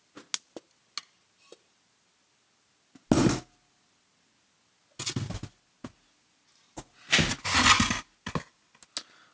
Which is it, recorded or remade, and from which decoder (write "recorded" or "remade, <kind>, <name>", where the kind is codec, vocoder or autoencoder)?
recorded